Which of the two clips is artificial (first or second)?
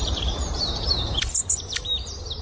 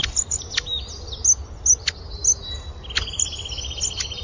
first